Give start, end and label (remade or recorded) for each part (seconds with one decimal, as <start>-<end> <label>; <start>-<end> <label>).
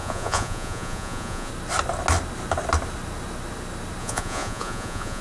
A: 0.0-1.5 remade; 1.5-4.0 recorded; 4.0-5.2 remade